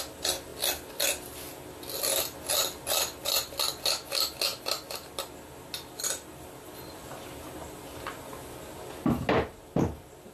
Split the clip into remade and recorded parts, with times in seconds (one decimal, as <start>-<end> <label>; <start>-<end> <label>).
0.0-10.3 recorded